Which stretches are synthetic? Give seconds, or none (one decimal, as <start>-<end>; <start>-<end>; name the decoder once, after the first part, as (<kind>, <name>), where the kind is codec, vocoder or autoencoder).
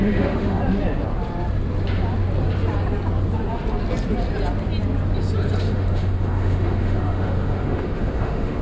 0.0-0.6 (autoencoder, DAC-VAE); 5.6-8.6